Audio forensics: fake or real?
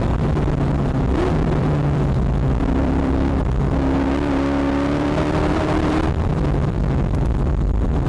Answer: fake